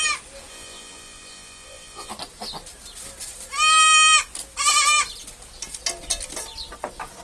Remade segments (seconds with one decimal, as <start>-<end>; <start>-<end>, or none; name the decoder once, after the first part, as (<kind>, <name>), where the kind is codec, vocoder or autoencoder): 0.5-2.1 (vocoder, Vocos)